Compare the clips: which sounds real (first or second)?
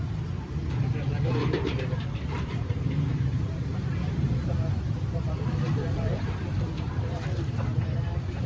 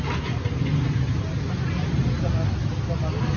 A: second